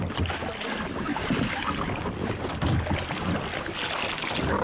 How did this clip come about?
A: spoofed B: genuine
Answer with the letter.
B